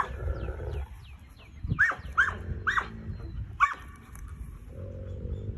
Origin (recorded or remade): recorded